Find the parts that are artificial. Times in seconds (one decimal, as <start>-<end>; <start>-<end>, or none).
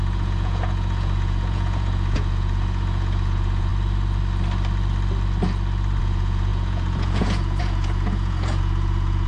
0.0-3.7; 6.0-9.3